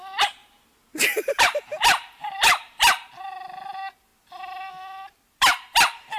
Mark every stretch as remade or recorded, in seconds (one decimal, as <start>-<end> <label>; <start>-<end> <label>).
0.0-0.4 recorded; 0.4-3.1 remade; 3.1-6.2 recorded